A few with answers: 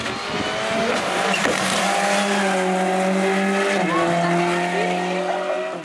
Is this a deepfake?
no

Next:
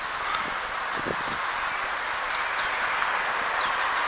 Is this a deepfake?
no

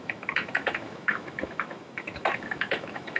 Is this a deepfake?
yes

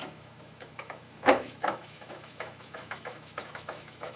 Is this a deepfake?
yes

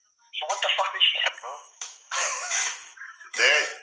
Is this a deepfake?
yes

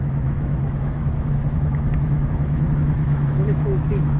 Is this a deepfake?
yes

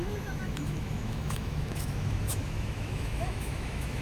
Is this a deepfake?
yes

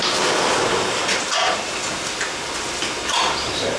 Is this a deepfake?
no